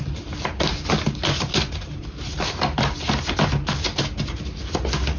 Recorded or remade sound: recorded